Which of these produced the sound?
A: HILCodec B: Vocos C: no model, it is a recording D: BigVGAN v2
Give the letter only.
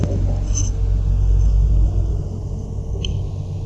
C